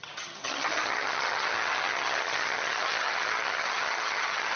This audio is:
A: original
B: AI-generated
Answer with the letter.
B